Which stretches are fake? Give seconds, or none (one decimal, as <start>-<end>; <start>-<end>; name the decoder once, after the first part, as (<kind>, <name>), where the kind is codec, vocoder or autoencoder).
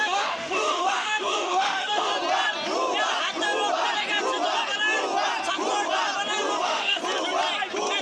0.0-2.1 (autoencoder, DAC-VAE); 6.6-7.0